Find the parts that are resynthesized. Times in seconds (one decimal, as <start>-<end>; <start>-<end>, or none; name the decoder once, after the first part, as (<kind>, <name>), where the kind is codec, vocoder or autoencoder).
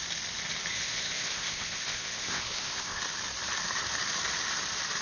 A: 0.7-3.0 (codec, ZipCodec)